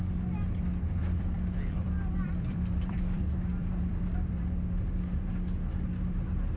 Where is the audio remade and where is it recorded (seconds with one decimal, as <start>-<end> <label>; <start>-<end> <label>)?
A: 0.0-1.0 recorded; 1.0-3.2 remade; 3.2-3.6 recorded; 3.6-4.4 remade; 4.4-6.6 recorded